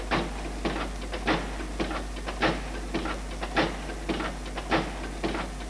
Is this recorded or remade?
recorded